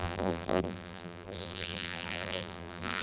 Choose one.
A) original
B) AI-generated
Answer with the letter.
B